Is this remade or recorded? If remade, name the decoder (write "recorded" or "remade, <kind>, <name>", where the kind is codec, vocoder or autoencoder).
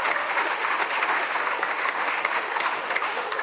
remade, autoencoder, DAC-VAE